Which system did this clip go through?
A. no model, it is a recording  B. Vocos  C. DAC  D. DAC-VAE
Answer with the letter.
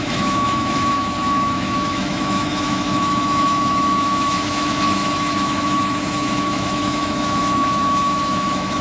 D